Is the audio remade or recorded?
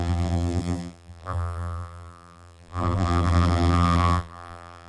remade